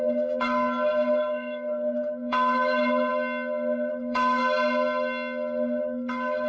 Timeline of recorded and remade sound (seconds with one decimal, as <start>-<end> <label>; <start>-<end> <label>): 0.0-3.1 remade; 3.1-3.9 recorded; 3.9-4.4 remade; 4.4-5.8 recorded; 5.8-6.5 remade